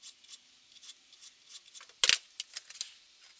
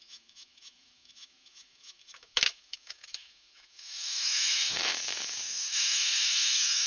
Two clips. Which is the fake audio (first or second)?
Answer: second